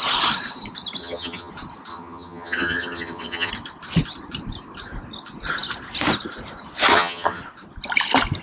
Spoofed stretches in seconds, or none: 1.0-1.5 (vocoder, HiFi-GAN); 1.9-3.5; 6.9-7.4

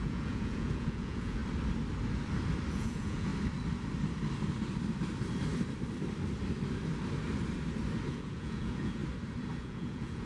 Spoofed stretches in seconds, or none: 0.0-1.4 (vocoder, Vocos); 2.7-3.3; 8.1-9.0; 9.6-10.3

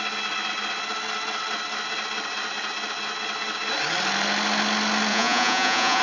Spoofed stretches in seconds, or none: 5.1-6.0 (vocoder, Vocos)

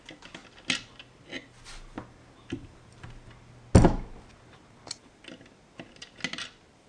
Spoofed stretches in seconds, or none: none

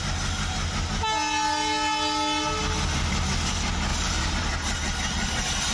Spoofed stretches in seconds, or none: 3.9-4.4 (vocoder, BigVGAN v2)

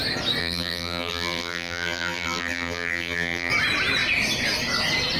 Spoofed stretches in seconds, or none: 0.4-3.5 (vocoder, BigVGAN v2)

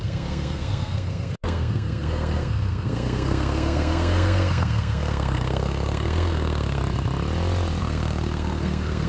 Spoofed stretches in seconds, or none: 0.0-6.8 (codec, SNAC); 7.8-9.1

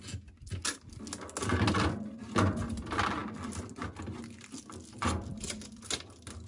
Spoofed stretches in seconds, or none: none